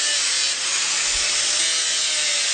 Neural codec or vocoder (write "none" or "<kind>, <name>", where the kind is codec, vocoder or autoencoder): none